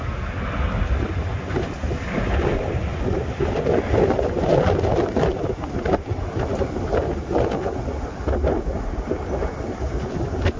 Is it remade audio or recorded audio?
recorded